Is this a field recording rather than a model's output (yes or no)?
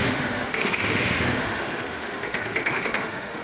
no